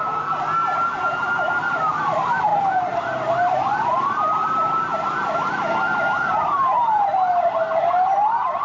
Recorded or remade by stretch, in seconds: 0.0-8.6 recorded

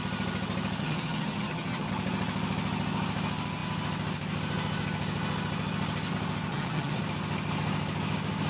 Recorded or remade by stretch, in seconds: 0.0-0.8 recorded; 0.8-1.9 remade; 1.9-6.5 recorded; 6.5-7.0 remade; 7.0-8.5 recorded

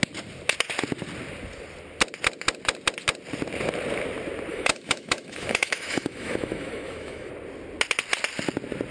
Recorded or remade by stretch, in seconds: 0.0-4.5 recorded; 4.5-7.3 remade; 7.3-8.9 recorded